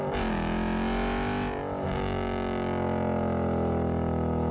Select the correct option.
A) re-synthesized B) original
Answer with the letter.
B